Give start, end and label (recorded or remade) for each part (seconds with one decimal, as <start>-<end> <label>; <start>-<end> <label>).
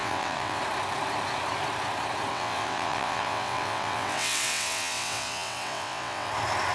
0.0-0.6 remade; 0.6-2.3 recorded; 2.3-6.3 remade; 6.3-6.7 recorded